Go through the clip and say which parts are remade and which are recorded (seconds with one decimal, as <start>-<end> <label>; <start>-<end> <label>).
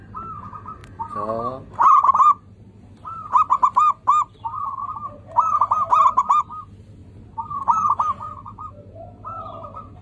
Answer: 0.0-10.0 recorded